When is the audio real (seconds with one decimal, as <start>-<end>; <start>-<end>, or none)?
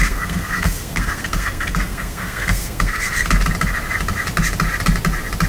3.3-5.5